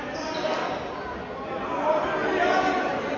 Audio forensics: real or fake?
real